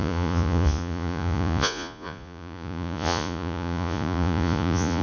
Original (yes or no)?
no